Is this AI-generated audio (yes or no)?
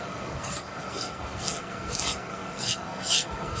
yes